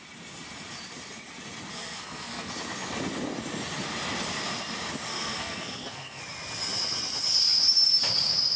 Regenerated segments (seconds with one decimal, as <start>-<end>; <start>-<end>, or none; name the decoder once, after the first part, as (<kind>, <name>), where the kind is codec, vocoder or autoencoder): 1.7-2.5 (codec, SNAC); 5.1-6.2